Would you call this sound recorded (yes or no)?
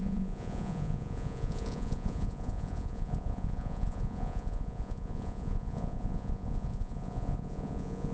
no